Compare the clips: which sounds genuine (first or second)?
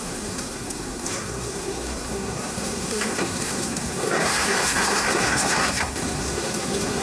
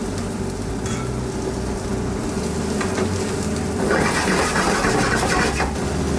second